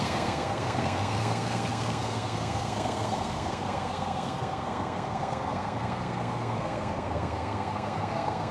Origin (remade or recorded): remade